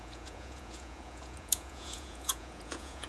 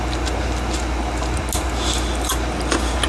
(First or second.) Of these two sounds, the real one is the second